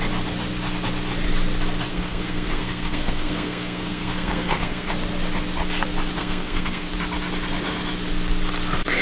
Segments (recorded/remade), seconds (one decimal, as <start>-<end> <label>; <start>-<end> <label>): 0.0-1.9 recorded; 1.9-4.9 remade; 4.9-6.2 recorded; 6.2-6.9 remade; 6.9-9.0 recorded